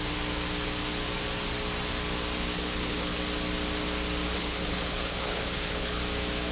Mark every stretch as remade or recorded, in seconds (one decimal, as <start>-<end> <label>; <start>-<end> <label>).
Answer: 0.0-2.5 recorded; 2.5-3.2 remade; 3.2-4.3 recorded; 4.3-6.0 remade; 6.0-6.5 recorded